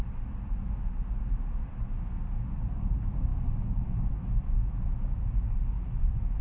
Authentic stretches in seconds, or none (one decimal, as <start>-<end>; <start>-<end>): 0.0-6.4